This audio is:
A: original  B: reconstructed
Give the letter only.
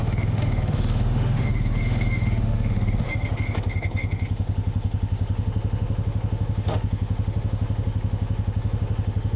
B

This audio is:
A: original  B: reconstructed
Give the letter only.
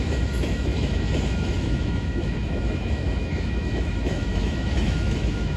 B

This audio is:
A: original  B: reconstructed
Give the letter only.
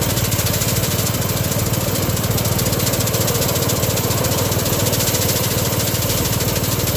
A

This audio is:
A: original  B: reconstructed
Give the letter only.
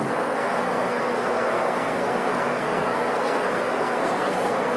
B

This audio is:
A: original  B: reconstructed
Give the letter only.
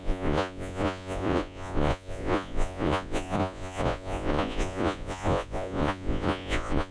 B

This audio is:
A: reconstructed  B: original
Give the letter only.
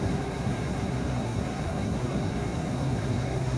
A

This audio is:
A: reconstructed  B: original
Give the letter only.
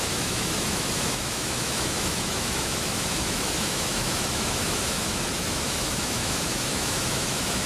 A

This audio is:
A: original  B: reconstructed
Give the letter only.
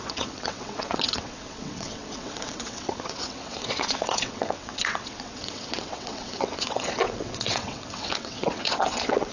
B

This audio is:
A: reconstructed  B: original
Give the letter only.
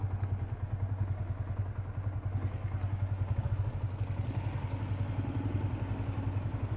B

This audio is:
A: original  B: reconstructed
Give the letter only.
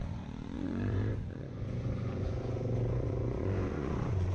B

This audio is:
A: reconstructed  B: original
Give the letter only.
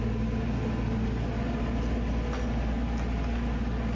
B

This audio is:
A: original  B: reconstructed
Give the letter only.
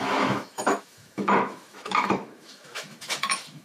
B